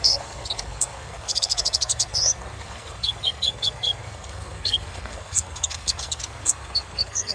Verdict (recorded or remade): remade